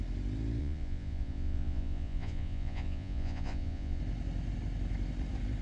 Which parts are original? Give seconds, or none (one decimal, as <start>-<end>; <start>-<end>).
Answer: 0.0-0.6; 4.0-5.6

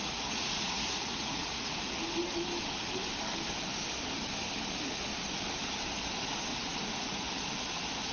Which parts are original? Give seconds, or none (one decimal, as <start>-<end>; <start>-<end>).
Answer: 1.9-6.5; 7.3-8.1

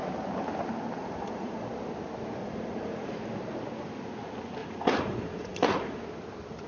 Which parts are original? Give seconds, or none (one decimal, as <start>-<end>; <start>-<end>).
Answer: 0.0-1.0; 1.7-2.4; 3.1-4.6; 6.0-6.7